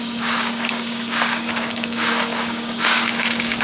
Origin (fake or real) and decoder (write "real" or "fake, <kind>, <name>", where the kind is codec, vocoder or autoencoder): fake, codec, DAC